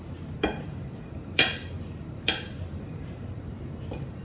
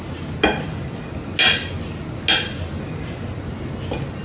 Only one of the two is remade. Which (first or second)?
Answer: first